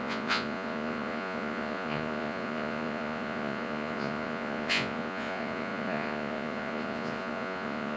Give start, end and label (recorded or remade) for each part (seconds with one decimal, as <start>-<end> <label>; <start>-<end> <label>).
0.0-8.0 remade